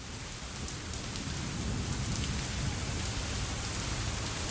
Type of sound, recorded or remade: recorded